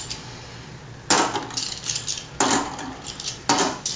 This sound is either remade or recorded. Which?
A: recorded